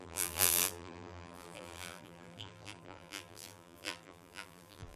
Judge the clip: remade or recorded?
remade